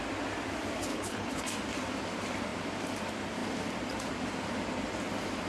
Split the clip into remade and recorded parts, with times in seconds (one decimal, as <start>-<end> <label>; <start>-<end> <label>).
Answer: 0.0-0.9 recorded; 0.9-1.4 remade; 1.4-5.5 recorded